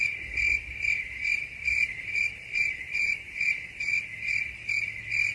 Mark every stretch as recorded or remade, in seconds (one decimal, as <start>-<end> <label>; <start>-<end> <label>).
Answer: 0.0-1.9 recorded; 1.9-3.4 remade; 3.4-5.3 recorded